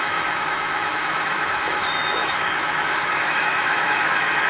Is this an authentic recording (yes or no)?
no